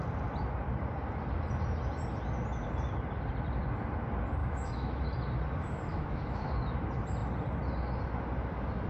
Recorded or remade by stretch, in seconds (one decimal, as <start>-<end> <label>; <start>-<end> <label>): 0.0-4.4 recorded; 4.4-5.0 remade; 5.0-5.9 recorded; 5.9-6.5 remade; 6.5-8.9 recorded